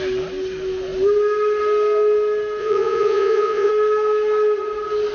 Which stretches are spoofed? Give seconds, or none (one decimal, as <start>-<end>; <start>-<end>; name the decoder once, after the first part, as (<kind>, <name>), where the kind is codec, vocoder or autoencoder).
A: 2.6-3.7 (vocoder, Vocos)